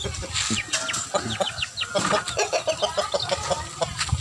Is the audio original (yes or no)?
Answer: yes